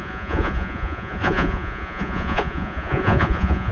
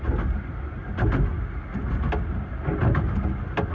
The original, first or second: second